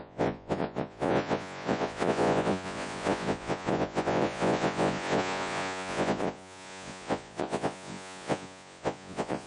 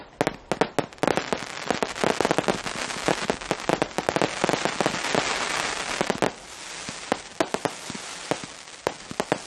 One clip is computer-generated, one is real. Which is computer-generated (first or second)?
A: first